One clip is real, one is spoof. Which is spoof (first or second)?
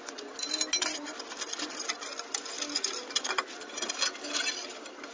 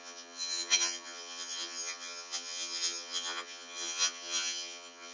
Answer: second